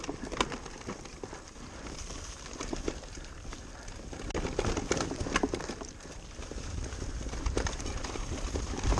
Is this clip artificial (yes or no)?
no